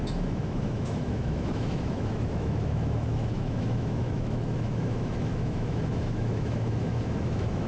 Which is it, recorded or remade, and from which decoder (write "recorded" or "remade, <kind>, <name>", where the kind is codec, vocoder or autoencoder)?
remade, autoencoder, DAC-VAE